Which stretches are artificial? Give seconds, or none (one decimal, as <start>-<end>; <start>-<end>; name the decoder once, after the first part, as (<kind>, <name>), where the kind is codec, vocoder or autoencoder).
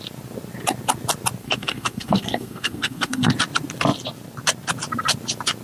1.4-3.3 (codec, SNAC)